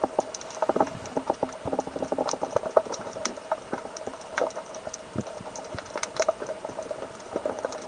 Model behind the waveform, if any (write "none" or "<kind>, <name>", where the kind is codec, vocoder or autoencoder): vocoder, BigVGAN v2